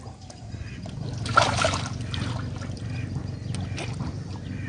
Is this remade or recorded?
recorded